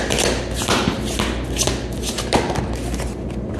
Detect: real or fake real